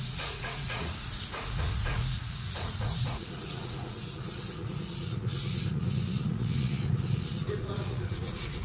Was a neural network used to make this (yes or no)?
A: yes